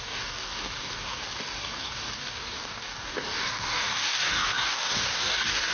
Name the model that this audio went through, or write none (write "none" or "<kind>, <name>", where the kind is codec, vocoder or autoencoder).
codec, DAC